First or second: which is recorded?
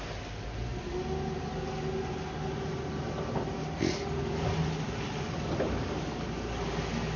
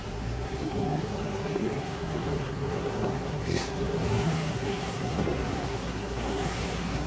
first